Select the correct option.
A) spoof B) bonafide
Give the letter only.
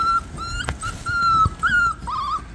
B